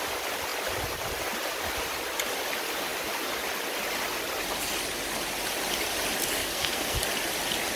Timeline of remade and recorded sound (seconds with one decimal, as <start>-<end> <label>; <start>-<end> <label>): 0.0-6.4 recorded; 6.4-7.0 remade; 7.0-7.8 recorded